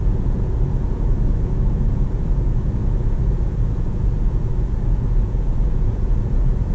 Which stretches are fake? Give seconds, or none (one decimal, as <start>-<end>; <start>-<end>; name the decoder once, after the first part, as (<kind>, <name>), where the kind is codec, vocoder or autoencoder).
0.0-6.7 (vocoder, Vocos)